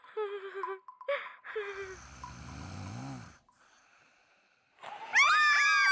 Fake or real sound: real